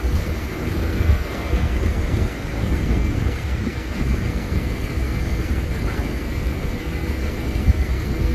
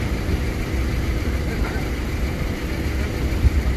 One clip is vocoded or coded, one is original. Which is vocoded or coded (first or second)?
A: first